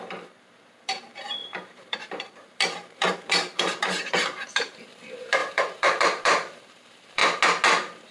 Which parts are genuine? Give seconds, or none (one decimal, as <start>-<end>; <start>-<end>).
7.2-8.1